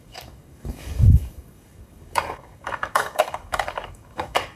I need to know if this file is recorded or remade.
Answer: remade